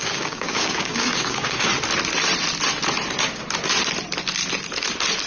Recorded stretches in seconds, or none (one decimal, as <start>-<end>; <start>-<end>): 1.7-5.3